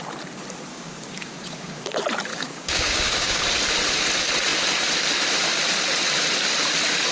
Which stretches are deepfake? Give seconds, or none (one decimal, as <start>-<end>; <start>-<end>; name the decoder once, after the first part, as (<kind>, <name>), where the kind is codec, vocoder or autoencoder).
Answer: 0.7-1.8 (codec, DAC); 2.3-3.4

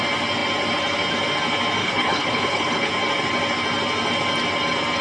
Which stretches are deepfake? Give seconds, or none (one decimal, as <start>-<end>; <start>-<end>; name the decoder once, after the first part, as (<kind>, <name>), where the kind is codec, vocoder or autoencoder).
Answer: 1.8-2.9 (codec, HILCodec)

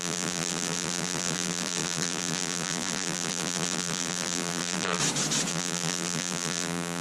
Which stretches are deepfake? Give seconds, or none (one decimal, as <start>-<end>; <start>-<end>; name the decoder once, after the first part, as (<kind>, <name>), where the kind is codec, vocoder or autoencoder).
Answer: 0.0-5.0 (vocoder, BigVGAN v2); 5.5-7.0

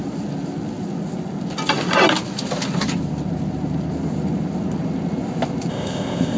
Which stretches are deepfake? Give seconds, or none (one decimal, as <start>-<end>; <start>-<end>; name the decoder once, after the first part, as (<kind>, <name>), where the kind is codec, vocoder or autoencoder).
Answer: 5.7-6.4 (codec, ZipCodec)